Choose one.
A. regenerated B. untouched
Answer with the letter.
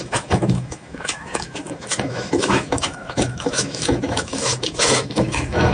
A